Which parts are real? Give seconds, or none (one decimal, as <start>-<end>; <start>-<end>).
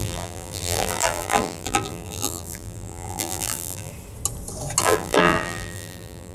3.9-4.8